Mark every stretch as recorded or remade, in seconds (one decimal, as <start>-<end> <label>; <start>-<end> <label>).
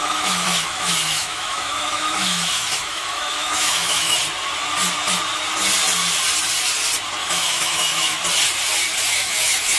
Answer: 0.0-4.2 remade; 4.2-7.2 recorded; 7.2-8.2 remade; 8.2-9.1 recorded; 9.1-9.8 remade